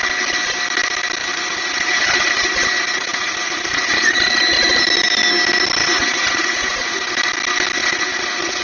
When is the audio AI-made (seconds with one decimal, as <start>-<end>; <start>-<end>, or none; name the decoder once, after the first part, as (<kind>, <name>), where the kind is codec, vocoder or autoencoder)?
1.2-4.8 (vocoder, Vocos); 5.8-7.1; 7.8-8.6